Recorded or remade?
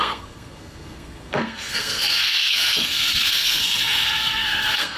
remade